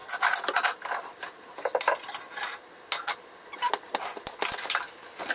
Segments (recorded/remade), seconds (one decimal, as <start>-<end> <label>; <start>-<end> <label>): 0.0-5.3 recorded